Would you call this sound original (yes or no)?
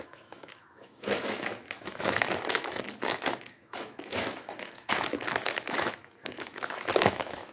no